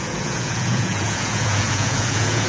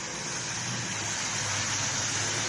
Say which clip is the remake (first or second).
first